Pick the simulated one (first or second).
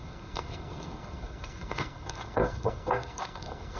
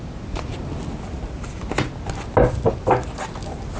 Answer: first